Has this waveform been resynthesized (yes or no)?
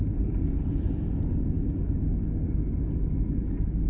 no